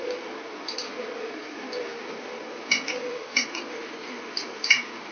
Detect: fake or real real